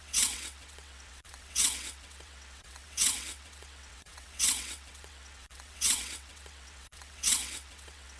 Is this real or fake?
fake